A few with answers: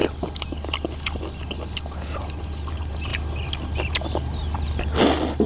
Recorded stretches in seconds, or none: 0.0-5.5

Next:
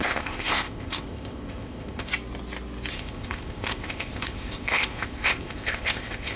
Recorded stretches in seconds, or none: 2.1-2.9

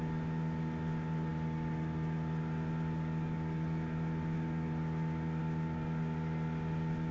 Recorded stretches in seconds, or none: 0.0-7.1